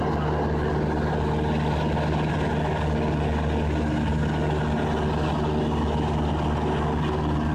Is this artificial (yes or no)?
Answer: no